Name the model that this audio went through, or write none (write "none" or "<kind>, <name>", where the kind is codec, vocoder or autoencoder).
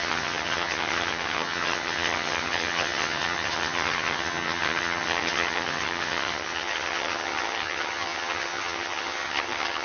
vocoder, HiFi-GAN